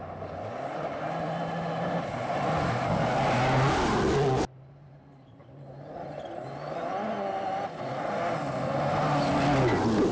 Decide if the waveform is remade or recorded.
recorded